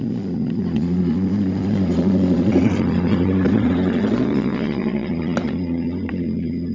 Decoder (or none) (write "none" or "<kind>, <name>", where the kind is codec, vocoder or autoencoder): vocoder, Vocos